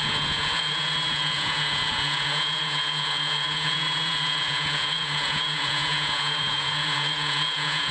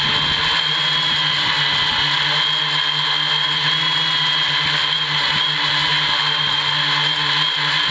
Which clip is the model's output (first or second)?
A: first